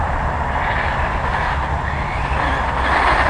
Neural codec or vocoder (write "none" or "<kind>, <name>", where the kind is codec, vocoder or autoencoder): none